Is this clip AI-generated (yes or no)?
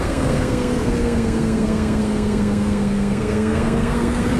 yes